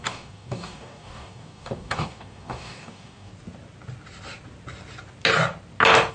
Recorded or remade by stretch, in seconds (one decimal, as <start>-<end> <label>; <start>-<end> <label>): 0.0-3.3 remade; 3.3-6.1 recorded